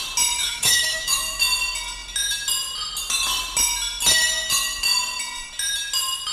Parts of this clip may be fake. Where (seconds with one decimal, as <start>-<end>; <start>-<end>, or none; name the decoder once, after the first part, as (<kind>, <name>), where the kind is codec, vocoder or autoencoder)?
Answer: 0.4-1.4 (autoencoder, DAC-VAE)